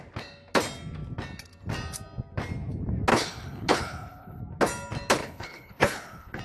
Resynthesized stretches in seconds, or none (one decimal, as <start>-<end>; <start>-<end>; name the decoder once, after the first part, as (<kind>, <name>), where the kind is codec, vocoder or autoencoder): 3.1-4.4 (codec, HILCodec); 5.2-6.4